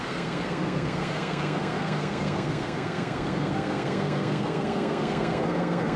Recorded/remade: remade